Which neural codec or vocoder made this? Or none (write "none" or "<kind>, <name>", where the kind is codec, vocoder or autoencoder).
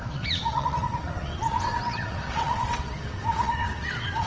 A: vocoder, WaveNeXt